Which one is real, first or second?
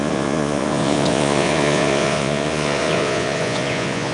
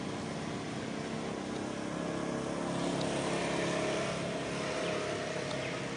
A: second